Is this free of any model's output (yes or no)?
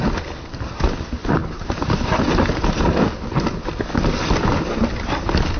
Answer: yes